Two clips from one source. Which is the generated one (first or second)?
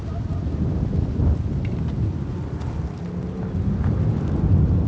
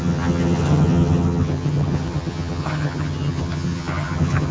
second